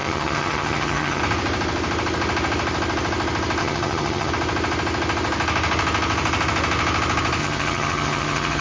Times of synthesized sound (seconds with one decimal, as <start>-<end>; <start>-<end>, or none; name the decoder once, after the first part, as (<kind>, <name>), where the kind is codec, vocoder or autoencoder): 0.0-1.2 (vocoder, HiFi-GAN); 3.6-4.3; 7.4-8.6

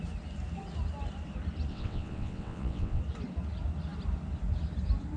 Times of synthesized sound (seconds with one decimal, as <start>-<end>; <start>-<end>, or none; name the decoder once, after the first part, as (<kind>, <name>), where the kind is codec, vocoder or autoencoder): 1.7-3.0 (vocoder, WaveNeXt)

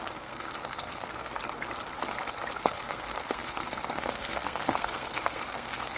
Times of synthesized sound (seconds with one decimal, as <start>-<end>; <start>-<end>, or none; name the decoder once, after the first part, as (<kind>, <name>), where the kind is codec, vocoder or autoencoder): 0.0-1.4 (codec, SNAC); 2.6-6.0

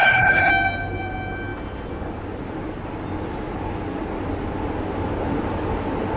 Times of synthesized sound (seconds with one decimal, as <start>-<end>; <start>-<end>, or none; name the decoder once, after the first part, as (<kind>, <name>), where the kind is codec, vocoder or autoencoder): 0.0-0.5 (codec, HILCodec)

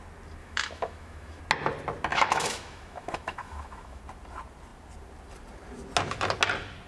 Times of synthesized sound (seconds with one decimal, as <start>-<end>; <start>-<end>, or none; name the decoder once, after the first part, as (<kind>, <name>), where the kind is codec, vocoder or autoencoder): 0.4-1.4 (autoencoder, DAC-VAE); 2.1-4.0

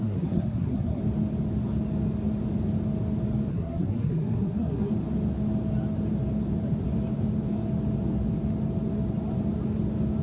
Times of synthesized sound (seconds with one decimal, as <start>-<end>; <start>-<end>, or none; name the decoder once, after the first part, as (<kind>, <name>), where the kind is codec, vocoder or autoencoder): 0.0-1.0 (codec, SNAC); 3.5-4.9

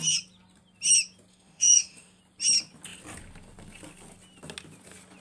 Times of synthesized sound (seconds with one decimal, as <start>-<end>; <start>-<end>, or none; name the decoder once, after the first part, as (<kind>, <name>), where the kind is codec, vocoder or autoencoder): 1.3-2.2 (autoencoder, DAC-VAE)

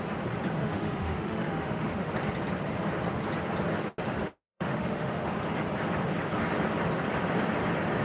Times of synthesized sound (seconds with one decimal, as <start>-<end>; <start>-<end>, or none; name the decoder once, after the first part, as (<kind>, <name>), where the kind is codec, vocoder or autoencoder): 0.6-2.1 (autoencoder, DAC-VAE); 4.2-5.3